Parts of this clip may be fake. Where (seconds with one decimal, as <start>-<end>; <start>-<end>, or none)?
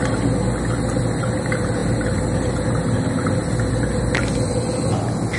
none